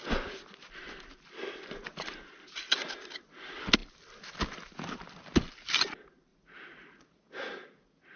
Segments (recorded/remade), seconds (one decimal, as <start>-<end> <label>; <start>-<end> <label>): 0.0-6.3 recorded; 6.3-8.2 remade